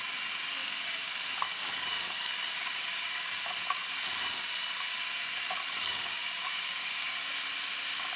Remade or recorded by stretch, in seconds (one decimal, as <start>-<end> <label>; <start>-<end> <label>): 0.0-0.6 recorded; 0.6-3.4 remade; 3.4-5.8 recorded; 5.8-7.3 remade; 7.3-8.2 recorded